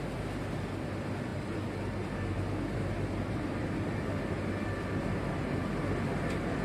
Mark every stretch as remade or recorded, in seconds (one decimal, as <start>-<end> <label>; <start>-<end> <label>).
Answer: 0.0-6.6 recorded